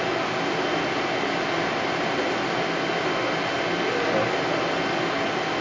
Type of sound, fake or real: real